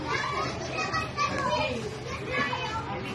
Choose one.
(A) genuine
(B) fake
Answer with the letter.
A